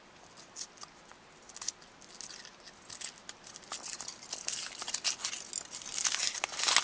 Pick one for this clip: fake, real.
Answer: real